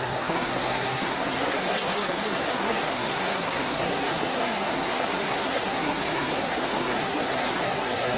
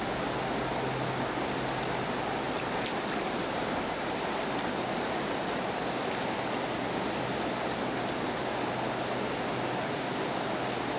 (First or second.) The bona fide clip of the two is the second